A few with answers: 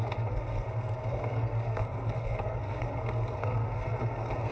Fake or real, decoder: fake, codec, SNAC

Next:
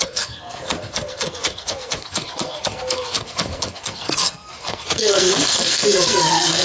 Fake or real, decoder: fake, codec, SNAC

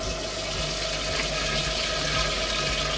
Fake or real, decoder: real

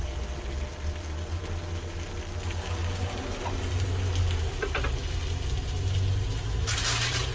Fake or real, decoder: real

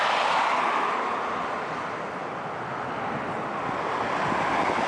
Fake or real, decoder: real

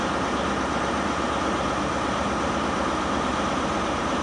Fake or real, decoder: real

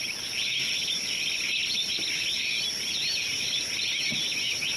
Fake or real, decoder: real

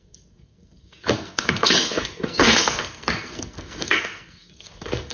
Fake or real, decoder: fake, codec, SNAC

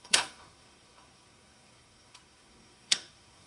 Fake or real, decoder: fake, codec, SNAC